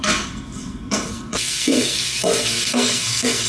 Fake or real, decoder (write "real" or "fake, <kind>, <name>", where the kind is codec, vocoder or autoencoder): fake, codec, SNAC